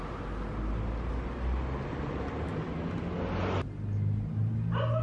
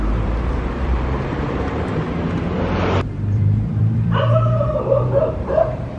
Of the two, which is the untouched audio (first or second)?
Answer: first